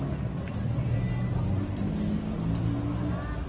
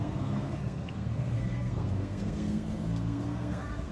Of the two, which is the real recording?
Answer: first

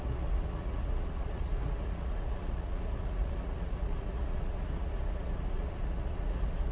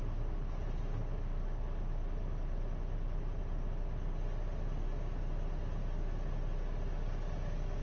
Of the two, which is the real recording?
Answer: second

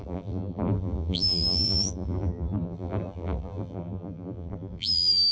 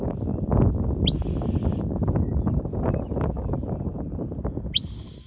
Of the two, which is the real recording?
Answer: second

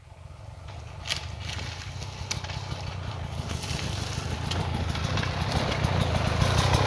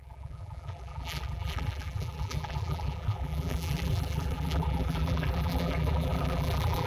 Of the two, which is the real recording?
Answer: first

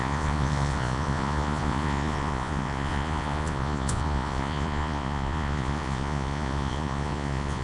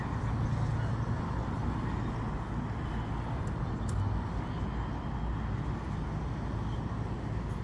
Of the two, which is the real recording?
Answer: second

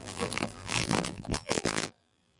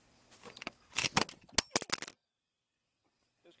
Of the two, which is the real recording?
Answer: second